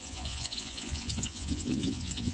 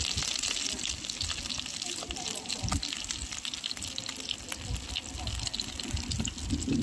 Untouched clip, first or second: second